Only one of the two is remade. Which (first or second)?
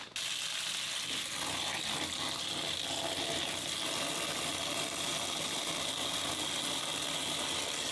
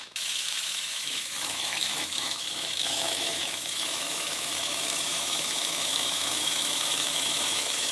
second